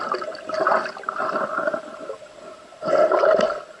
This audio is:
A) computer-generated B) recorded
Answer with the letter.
A